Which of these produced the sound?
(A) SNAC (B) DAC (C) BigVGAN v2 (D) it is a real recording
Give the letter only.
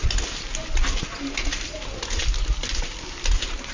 D